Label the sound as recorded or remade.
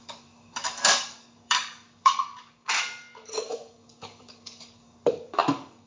remade